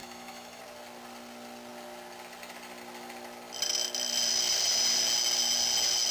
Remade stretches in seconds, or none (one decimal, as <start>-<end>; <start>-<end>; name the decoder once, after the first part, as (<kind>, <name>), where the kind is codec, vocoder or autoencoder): 0.0-0.6 (autoencoder, DAC-VAE)